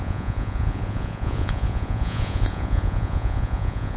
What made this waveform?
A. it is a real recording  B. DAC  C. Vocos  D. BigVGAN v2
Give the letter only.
C